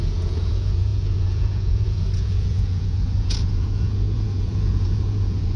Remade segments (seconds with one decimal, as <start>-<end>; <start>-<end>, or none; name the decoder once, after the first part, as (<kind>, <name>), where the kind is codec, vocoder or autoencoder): 0.0-5.6 (vocoder, Vocos)